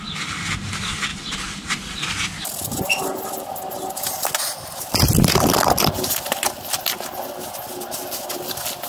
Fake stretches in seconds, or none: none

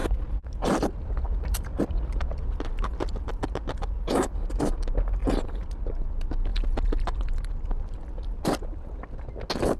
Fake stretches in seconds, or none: 0.0-2.3 (vocoder, BigVGAN v2); 6.5-7.5

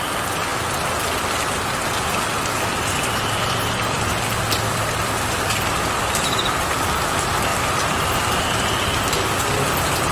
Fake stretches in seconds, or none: 0.0-0.5 (vocoder, BigVGAN v2); 3.6-10.1

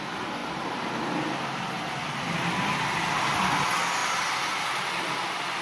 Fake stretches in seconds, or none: 0.4-1.6 (vocoder, BigVGAN v2)